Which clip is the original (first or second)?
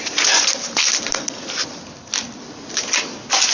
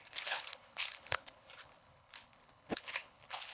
first